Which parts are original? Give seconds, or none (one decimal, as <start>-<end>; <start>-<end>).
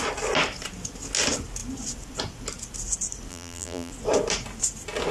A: 0.0-3.3; 3.9-5.1